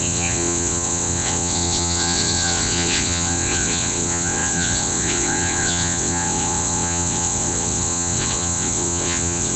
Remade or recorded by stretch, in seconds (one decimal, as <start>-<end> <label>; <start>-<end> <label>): 0.0-9.6 remade